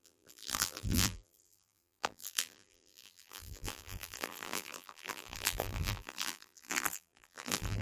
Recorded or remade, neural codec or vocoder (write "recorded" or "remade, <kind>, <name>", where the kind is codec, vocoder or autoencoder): remade, vocoder, BigVGAN v2